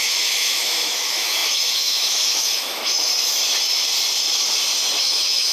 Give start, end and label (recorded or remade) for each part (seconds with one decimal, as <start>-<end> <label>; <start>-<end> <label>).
0.0-3.1 remade; 3.1-5.0 recorded; 5.0-5.5 remade